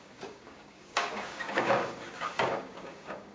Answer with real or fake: fake